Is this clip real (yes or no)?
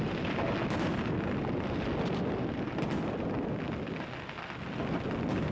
yes